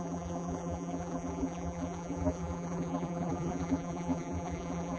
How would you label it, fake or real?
fake